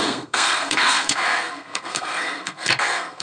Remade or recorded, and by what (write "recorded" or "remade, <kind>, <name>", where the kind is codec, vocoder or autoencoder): remade, codec, SNAC